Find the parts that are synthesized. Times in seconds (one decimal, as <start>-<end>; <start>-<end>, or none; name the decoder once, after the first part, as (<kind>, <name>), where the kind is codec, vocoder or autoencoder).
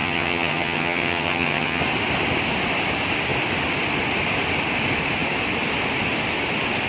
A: 0.0-1.8 (vocoder, HiFi-GAN)